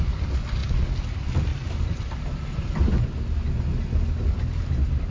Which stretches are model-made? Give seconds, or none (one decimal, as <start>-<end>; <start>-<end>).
none